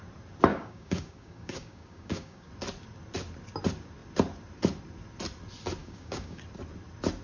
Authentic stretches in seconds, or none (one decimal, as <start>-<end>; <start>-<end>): 0.0-0.5; 2.5-5.8; 6.4-7.2